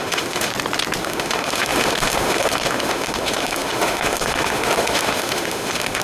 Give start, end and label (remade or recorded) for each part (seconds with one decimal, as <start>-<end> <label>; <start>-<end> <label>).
0.0-0.5 remade; 0.5-1.0 recorded; 1.0-6.0 remade